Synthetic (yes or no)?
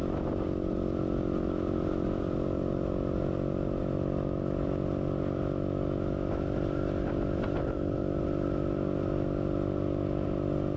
no